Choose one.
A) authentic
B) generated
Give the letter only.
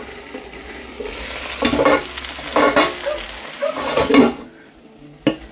A